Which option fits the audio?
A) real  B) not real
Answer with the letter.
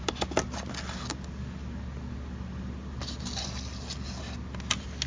A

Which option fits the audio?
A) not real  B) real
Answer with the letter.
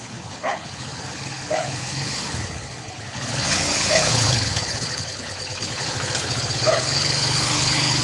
A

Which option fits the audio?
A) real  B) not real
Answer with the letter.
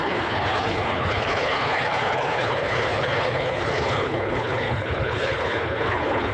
B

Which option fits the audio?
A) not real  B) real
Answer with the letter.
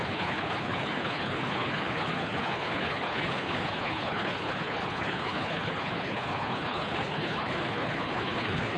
A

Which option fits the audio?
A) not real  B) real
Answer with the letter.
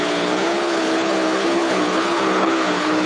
A